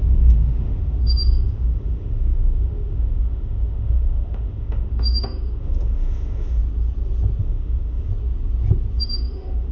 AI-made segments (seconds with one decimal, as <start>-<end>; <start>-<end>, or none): 0.0-6.6; 7.4-8.1; 9.0-9.7

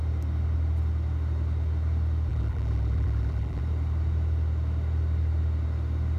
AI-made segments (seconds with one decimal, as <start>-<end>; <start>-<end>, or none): 2.3-3.6